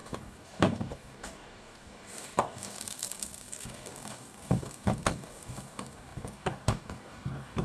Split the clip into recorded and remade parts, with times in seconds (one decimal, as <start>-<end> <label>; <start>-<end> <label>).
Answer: 0.0-7.6 remade